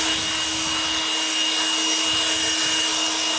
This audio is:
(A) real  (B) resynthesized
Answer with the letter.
A